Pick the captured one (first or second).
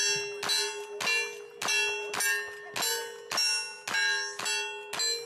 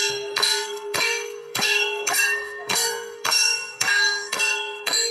first